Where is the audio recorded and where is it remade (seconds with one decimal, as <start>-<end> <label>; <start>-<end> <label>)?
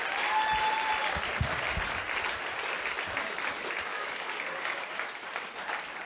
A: 0.0-3.9 recorded; 3.9-4.9 remade; 4.9-6.1 recorded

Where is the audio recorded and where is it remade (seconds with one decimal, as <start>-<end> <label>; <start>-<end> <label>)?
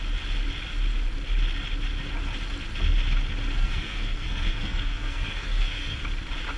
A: 0.0-3.6 recorded; 3.6-6.0 remade; 6.0-6.6 recorded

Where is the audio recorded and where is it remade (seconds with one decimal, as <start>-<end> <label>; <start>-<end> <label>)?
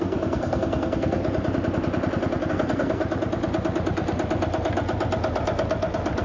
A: 0.0-1.2 remade; 1.2-2.5 recorded; 2.5-3.0 remade; 3.0-6.2 recorded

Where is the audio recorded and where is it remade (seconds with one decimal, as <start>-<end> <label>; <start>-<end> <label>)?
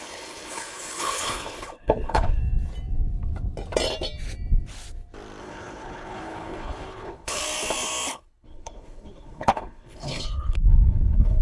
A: 0.0-2.4 remade; 2.4-5.4 recorded; 5.4-7.4 remade; 7.4-8.1 recorded; 8.1-11.4 remade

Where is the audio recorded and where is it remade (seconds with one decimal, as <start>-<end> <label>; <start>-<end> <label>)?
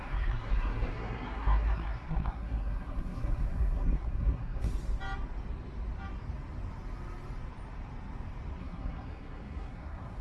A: 0.0-4.7 remade; 4.7-8.6 recorded; 8.6-10.2 remade